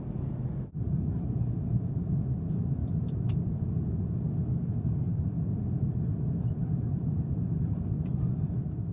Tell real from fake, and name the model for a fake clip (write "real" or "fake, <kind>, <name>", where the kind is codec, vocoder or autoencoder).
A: real